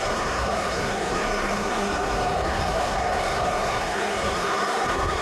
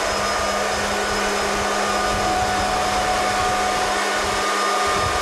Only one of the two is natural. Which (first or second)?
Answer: second